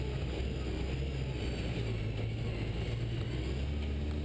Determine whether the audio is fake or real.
real